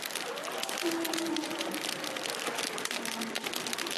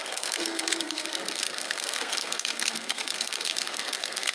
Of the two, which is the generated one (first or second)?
second